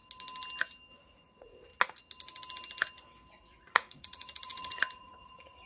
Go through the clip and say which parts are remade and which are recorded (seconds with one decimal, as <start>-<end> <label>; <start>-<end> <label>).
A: 0.0-1.0 recorded; 1.0-1.7 remade; 1.7-3.4 recorded; 3.4-5.7 remade